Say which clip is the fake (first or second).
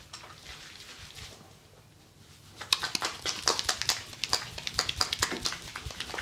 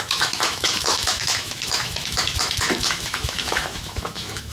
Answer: second